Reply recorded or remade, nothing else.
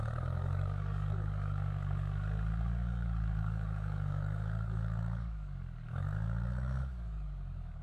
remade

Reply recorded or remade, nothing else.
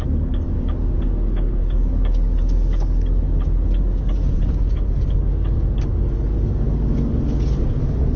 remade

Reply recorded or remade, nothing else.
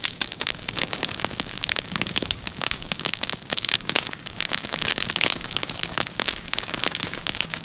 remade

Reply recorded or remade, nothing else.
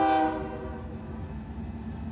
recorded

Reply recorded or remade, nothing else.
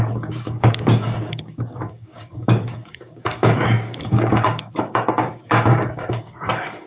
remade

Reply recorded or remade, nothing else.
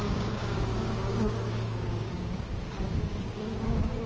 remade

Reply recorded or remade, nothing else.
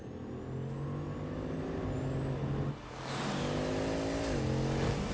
recorded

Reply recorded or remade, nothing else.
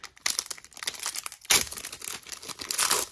recorded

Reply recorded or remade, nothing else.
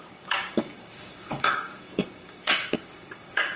remade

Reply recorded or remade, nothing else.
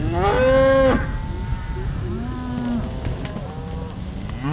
recorded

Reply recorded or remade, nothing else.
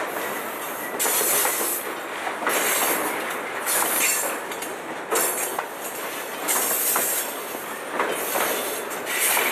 recorded